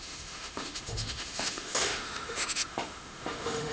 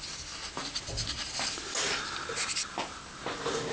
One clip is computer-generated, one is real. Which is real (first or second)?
second